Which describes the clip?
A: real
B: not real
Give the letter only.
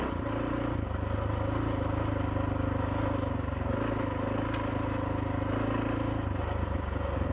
A